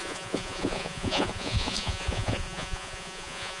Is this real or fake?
fake